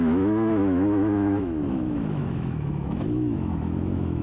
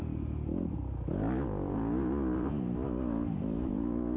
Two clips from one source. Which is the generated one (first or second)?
first